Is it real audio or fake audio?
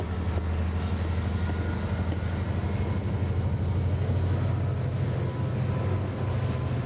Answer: real